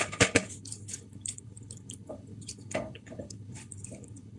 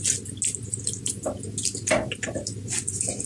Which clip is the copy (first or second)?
first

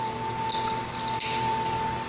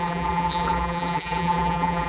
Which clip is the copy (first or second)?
second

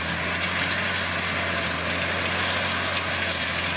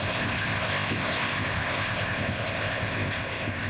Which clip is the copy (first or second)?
second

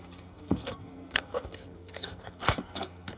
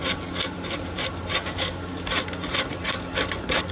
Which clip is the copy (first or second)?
first